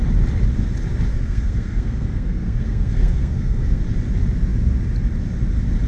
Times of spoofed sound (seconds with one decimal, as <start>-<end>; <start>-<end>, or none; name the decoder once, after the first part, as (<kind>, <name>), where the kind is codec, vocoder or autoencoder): 1.1-3.8 (codec, SNAC)